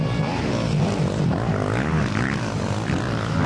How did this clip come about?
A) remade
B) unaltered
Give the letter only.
B